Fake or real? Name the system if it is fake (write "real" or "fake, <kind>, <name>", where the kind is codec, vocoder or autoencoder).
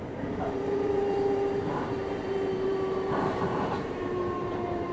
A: fake, vocoder, BigVGAN v2